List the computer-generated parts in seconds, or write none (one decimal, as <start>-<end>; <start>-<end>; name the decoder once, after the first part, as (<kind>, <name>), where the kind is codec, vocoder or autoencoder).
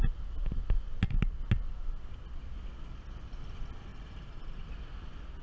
3.9-4.7 (vocoder, BigVGAN v2)